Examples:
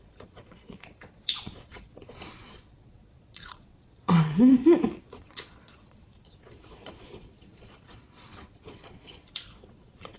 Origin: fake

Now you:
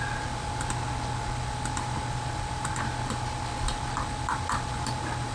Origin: real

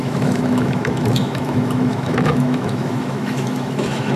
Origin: fake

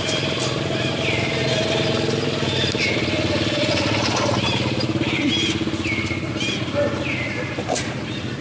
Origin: real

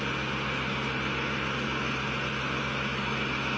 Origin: real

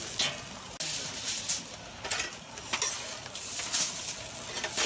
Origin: real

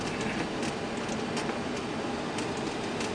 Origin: real